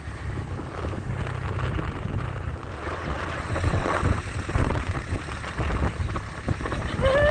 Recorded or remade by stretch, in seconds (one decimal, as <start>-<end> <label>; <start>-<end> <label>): 0.0-2.8 recorded; 2.8-4.0 remade; 4.0-4.6 recorded; 4.6-5.2 remade; 5.2-7.3 recorded

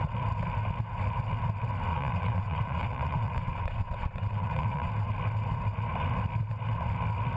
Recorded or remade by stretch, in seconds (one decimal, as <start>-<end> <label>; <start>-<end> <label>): 0.0-1.9 recorded; 1.9-4.9 remade; 4.9-7.4 recorded